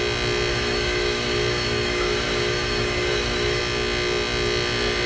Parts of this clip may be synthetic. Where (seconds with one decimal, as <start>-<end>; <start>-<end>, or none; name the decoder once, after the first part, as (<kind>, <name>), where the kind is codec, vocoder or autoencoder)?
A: 0.5-3.6 (autoencoder, DAC-VAE)